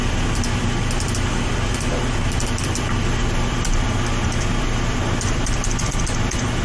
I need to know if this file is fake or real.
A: fake